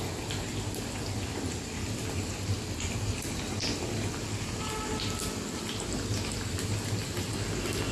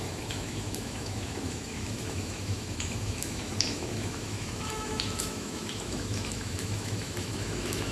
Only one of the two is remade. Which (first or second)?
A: second